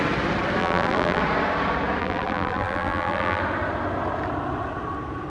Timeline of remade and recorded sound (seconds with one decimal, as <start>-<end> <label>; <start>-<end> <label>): 0.0-0.6 recorded; 0.6-1.2 remade; 1.2-2.0 recorded; 2.0-3.4 remade; 3.4-5.3 recorded